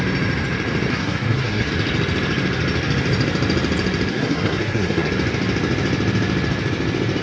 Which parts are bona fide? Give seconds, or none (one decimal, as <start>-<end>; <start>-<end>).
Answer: 0.0-0.9; 1.7-4.1; 5.1-7.2